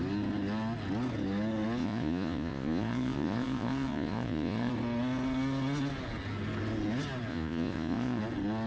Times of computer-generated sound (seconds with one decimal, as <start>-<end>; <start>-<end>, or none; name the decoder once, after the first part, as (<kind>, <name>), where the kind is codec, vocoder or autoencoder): 1.8-4.7 (vocoder, Vocos); 7.3-8.2